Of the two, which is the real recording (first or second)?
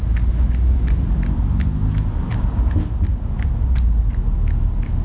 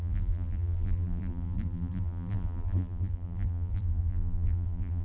first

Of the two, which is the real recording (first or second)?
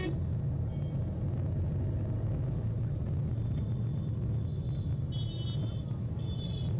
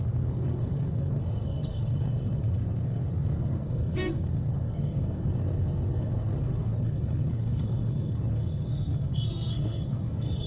first